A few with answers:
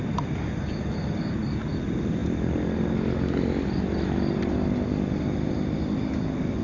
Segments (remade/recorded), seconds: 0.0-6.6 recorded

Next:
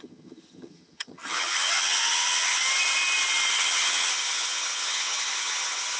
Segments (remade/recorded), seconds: 0.0-2.6 remade; 2.6-3.5 recorded; 3.5-6.0 remade

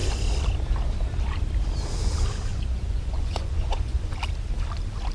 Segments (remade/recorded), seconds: 0.0-2.5 recorded; 2.5-4.1 remade; 4.1-5.1 recorded

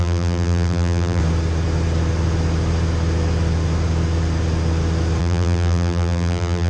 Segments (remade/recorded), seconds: 0.0-1.2 remade; 1.2-5.2 recorded; 5.2-6.7 remade

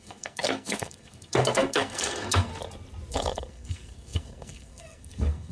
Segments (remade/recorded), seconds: 0.0-2.5 remade; 2.5-3.1 recorded; 3.1-5.5 remade

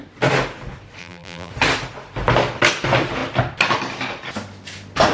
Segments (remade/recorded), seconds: 0.0-1.0 recorded; 1.0-1.5 remade; 1.5-5.1 recorded

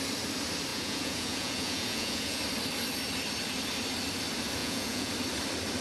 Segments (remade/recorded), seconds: 0.0-0.7 recorded; 0.7-2.4 remade; 2.4-4.6 recorded; 4.6-5.1 remade; 5.1-5.8 recorded